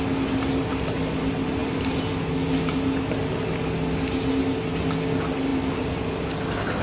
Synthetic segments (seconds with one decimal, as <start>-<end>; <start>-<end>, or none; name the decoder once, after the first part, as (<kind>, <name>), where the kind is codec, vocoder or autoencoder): 5.5-6.0 (vocoder, BigVGAN v2)